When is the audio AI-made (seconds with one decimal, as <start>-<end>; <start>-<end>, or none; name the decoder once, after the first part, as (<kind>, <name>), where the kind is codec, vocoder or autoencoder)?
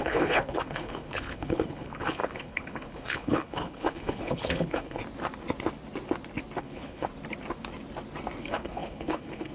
0.0-5.0 (codec, HILCodec); 6.6-7.1; 8.4-9.5